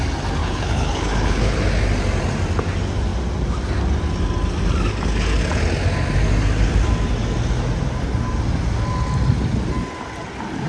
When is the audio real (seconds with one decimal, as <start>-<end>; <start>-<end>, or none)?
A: 0.0-0.4; 1.6-10.7